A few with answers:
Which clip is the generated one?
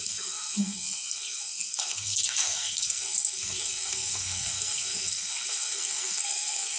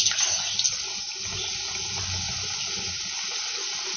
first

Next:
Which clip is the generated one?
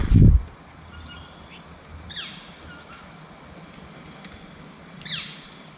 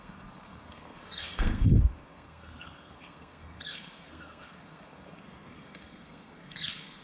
second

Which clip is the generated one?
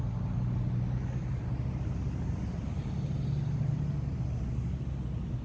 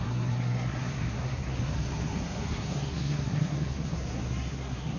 second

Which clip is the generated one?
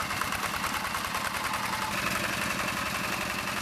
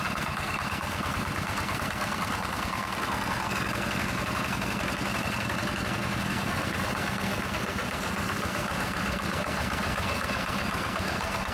second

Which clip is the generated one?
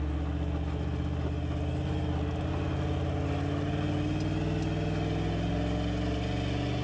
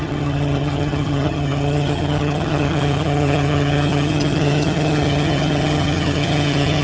second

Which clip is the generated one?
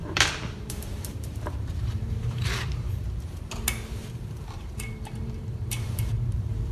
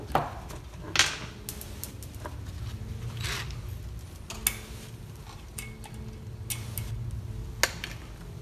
first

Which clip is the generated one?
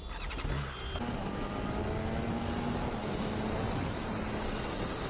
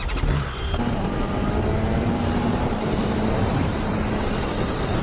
second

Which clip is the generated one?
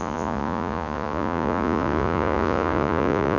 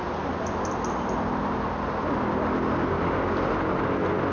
first